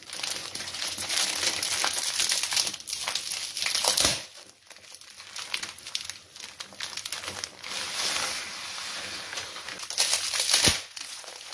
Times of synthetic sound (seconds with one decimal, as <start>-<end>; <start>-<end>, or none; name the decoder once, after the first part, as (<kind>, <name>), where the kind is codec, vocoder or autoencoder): 0.4-1.1 (vocoder, Vocos); 10.7-11.5